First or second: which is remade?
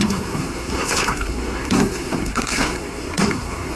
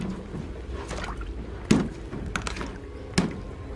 first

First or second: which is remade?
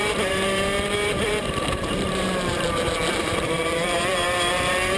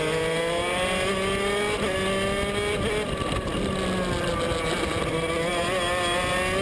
first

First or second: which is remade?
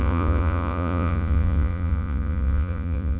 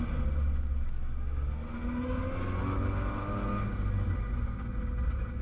first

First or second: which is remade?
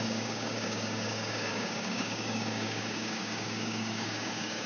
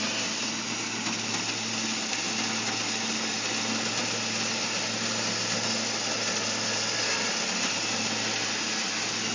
first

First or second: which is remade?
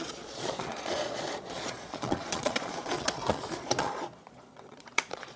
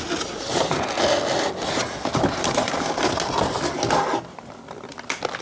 first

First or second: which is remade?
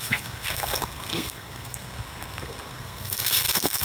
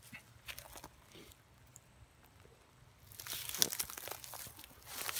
first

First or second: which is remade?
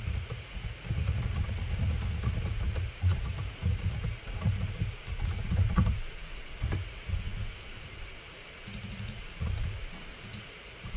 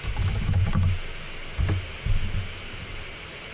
first